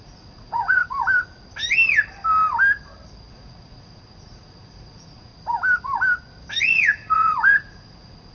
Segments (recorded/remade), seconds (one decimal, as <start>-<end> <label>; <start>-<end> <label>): 0.0-0.8 remade; 0.8-3.3 recorded; 3.3-5.3 remade; 5.3-6.6 recorded; 6.6-8.3 remade